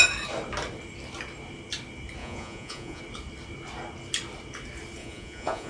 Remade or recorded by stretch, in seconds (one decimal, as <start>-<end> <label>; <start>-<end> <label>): 0.0-2.2 recorded; 2.2-3.0 remade; 3.0-5.0 recorded; 5.0-5.7 remade